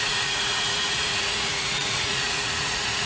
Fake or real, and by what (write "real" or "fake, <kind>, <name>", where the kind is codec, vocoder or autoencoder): fake, vocoder, Vocos